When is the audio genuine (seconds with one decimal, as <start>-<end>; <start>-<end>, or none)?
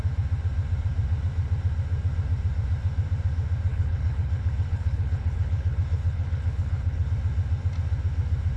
0.0-3.7; 7.1-8.6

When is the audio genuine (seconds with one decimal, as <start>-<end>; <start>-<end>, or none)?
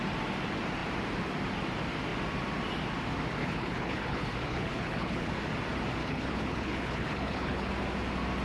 0.0-3.4; 5.3-6.0; 7.7-8.4